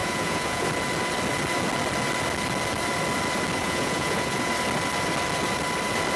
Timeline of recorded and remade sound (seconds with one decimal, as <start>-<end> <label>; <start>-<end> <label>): 0.0-0.7 remade; 0.7-3.6 recorded; 3.6-4.5 remade; 4.5-6.2 recorded